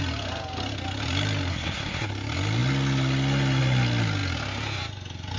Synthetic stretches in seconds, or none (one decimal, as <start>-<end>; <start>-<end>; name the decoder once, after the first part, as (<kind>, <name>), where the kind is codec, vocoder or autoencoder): 1.5-2.1 (codec, SNAC)